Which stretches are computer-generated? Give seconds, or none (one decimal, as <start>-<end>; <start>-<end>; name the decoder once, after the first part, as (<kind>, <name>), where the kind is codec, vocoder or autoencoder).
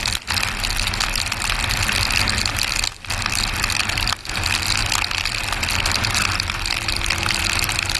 none